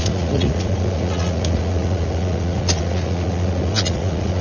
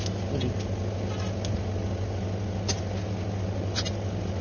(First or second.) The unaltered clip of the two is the second